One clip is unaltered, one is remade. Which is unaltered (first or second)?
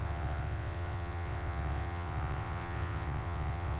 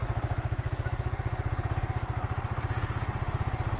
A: second